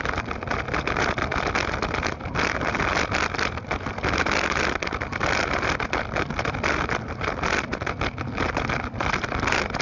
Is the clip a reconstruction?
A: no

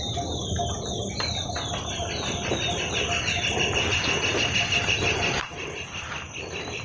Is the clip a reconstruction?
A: no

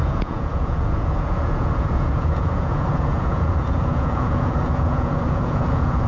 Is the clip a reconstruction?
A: yes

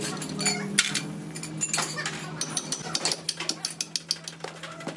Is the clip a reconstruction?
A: no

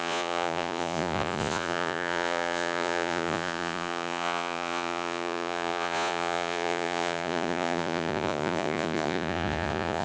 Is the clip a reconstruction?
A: yes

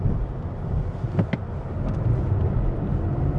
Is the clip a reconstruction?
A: no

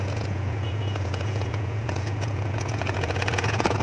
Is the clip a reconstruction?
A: yes